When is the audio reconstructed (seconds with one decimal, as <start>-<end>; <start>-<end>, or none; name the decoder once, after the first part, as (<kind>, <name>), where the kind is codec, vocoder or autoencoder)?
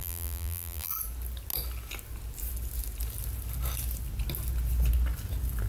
0.0-0.9 (vocoder, BigVGAN v2)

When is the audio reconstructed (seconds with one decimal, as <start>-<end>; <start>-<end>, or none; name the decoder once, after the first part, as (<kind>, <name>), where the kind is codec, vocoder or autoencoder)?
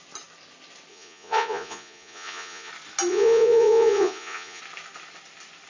0.9-2.7 (vocoder, Vocos); 3.1-4.6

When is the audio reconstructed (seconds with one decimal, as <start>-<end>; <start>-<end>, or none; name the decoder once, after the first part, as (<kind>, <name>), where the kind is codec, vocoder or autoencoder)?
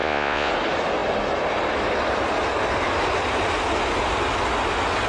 0.0-0.5 (vocoder, Vocos)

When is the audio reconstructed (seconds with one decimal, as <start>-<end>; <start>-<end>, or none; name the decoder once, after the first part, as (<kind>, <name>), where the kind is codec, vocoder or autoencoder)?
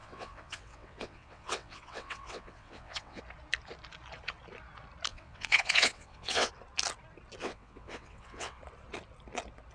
0.0-3.2 (vocoder, WaveNeXt); 5.1-6.5; 7.4-8.6